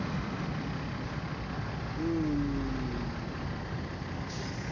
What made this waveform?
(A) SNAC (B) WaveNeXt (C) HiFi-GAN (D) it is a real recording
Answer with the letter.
D